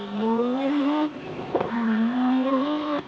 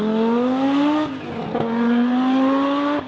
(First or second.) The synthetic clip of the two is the first